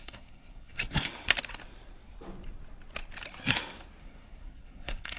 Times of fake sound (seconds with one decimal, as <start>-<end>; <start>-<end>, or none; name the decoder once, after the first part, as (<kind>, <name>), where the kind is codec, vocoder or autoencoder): 0.0-1.1 (codec, SNAC); 4.0-5.2